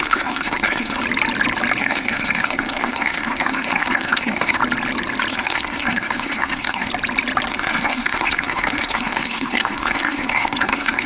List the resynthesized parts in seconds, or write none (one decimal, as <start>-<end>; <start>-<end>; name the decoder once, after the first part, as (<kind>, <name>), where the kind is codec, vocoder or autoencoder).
0.0-1.0 (codec, SNAC); 1.8-4.6; 5.3-6.9; 7.5-11.1